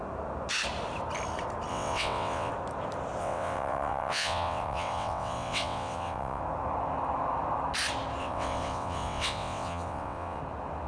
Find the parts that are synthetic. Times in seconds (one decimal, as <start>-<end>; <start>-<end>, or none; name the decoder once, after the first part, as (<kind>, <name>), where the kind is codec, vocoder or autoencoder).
1.7-2.5 (vocoder, WaveNeXt); 3.2-6.4; 8.2-10.4